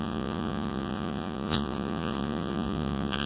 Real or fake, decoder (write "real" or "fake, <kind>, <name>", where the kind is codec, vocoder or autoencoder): fake, vocoder, Vocos